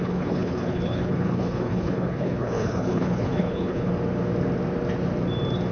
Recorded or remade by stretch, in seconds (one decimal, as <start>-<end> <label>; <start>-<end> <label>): 0.0-3.9 remade; 3.9-5.7 recorded